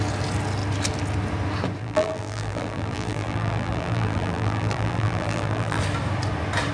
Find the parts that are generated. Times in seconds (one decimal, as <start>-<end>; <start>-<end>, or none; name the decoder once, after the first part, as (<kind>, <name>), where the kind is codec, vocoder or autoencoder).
1.8-5.8 (vocoder, BigVGAN v2)